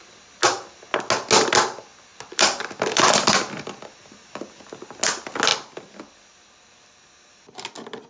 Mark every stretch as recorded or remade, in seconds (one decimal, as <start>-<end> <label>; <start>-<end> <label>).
0.0-2.1 recorded; 2.1-3.3 remade; 3.3-8.1 recorded